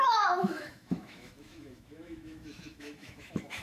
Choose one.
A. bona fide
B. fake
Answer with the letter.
B